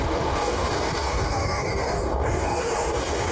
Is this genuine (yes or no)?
no